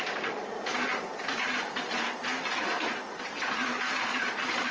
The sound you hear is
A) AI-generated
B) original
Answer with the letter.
A